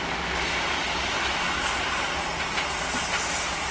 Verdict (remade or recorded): recorded